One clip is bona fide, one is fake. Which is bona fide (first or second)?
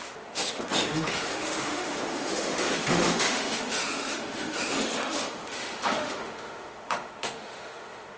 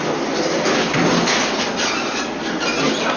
second